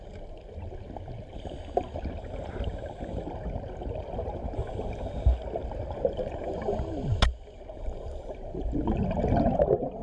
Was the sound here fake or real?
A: real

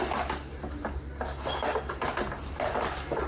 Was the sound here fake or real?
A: real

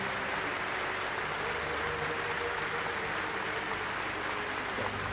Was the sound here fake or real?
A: real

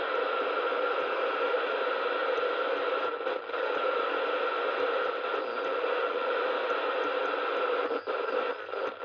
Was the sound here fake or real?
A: real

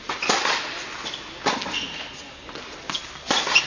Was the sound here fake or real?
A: real